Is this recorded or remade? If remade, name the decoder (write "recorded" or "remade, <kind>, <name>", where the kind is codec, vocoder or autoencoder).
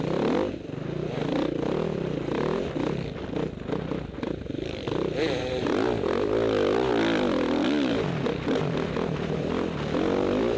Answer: remade, vocoder, BigVGAN v2